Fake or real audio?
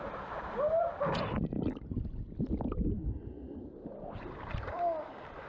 real